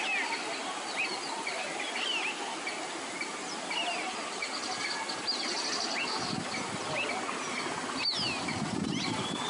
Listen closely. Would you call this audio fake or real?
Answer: real